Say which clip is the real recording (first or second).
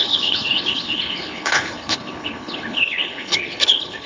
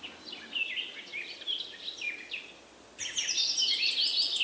second